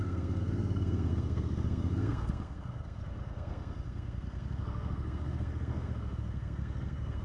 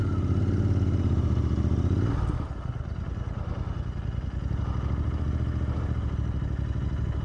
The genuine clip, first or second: second